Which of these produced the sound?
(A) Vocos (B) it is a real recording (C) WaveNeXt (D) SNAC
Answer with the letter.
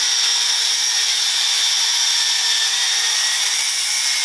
B